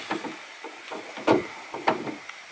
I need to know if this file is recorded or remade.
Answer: recorded